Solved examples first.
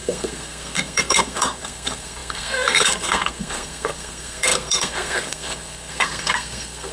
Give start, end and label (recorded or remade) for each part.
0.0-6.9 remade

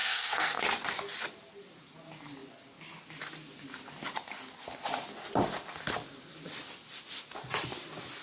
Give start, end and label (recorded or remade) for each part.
0.0-0.6 remade; 0.6-8.2 recorded

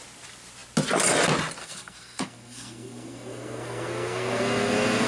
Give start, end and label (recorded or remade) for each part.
0.0-1.6 recorded; 1.6-5.1 remade

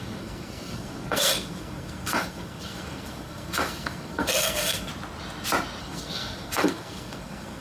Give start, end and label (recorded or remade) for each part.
0.0-4.9 remade; 4.9-5.8 recorded; 5.8-7.6 remade

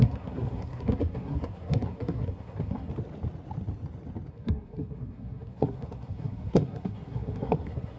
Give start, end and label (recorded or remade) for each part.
0.0-2.9 remade; 2.9-4.3 recorded; 4.3-8.0 remade